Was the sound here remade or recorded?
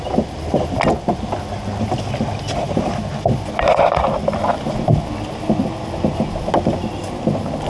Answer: recorded